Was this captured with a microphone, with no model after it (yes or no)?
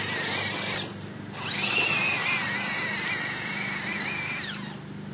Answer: yes